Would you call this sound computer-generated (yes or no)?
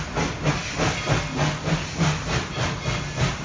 no